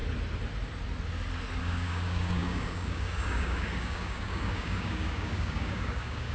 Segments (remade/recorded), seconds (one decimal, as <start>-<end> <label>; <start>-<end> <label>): 0.0-1.6 recorded; 1.6-6.3 remade